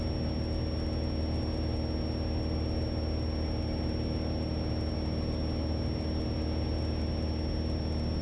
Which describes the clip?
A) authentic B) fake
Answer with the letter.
A